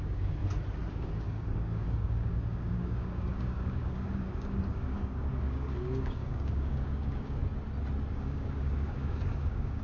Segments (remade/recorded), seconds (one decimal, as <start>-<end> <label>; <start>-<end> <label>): 0.0-0.4 remade; 0.4-0.9 recorded; 0.9-7.4 remade; 7.4-8.1 recorded; 8.1-9.8 remade